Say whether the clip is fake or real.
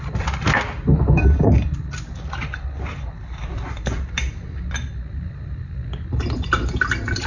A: real